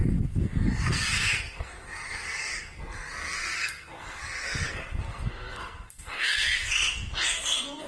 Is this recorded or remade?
remade